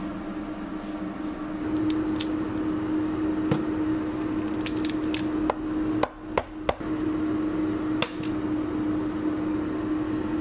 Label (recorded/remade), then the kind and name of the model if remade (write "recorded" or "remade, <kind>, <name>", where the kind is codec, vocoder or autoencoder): recorded